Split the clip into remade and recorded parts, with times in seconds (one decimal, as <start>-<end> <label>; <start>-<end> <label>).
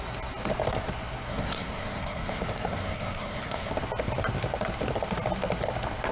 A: 0.0-1.3 recorded; 1.3-3.7 remade; 3.7-6.1 recorded